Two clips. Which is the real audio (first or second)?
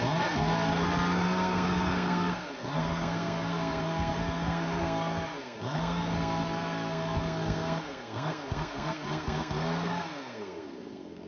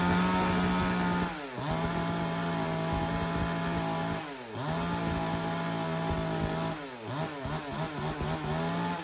second